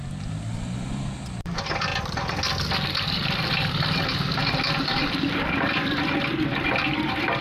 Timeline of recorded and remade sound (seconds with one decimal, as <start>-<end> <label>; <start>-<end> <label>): 0.0-1.9 remade; 1.9-4.8 recorded; 4.8-7.4 remade

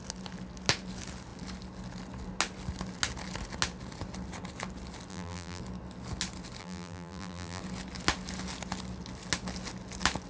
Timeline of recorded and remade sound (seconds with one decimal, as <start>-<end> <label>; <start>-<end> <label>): 0.0-5.1 recorded; 5.1-5.6 remade; 5.6-6.6 recorded; 6.6-7.6 remade; 7.6-10.3 recorded

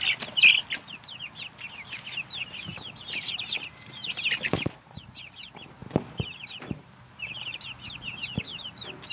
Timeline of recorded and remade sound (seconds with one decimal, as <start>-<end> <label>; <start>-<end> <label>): 0.0-2.7 recorded; 2.7-4.6 remade; 4.6-5.8 recorded; 5.8-9.1 remade

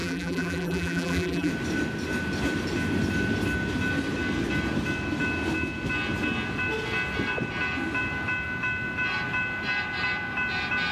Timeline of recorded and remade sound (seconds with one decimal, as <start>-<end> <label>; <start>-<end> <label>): 0.0-1.5 remade; 1.5-10.9 recorded

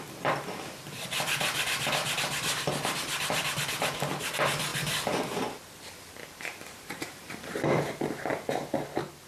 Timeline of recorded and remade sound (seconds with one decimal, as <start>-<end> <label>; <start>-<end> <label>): 0.0-4.7 recorded; 4.7-7.8 remade; 7.8-9.3 recorded

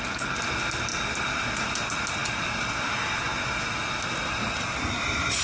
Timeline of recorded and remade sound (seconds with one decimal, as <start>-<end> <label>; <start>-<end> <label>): 0.0-0.9 recorded; 0.9-1.4 remade; 1.4-5.4 recorded